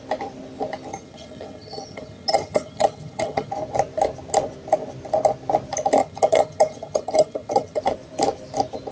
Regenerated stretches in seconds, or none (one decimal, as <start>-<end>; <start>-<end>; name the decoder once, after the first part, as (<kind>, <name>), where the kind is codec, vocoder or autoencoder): 0.9-3.5 (vocoder, HiFi-GAN); 6.0-7.8